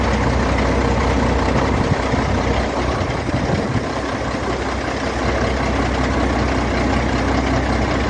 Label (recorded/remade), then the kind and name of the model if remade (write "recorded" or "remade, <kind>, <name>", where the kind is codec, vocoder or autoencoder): recorded